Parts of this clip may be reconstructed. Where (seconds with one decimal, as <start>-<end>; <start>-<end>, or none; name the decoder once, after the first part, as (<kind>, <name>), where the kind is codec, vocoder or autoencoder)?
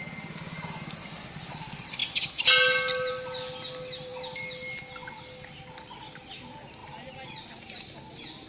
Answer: none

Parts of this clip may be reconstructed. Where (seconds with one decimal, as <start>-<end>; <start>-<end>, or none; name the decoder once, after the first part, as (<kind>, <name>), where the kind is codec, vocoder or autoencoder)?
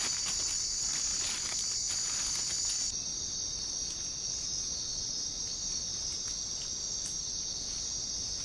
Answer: none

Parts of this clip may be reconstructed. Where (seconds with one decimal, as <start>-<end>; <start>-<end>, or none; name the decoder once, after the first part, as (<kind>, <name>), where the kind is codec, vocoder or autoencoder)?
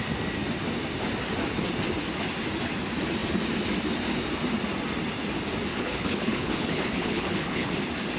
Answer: 5.7-7.7 (codec, HILCodec)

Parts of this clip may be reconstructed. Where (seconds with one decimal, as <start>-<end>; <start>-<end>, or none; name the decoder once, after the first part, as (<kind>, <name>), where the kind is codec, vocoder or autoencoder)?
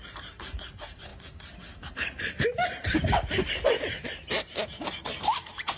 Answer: 0.0-5.8 (vocoder, BigVGAN v2)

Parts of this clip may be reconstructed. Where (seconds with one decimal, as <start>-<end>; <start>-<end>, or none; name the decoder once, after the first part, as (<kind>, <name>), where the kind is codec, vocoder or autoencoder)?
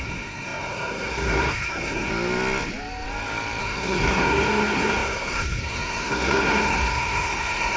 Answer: 0.0-2.1 (codec, SNAC); 3.6-7.8